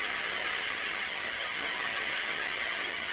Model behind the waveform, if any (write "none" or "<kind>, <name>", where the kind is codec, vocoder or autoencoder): vocoder, HiFi-GAN